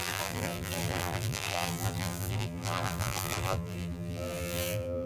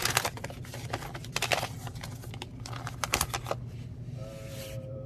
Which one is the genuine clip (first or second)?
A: second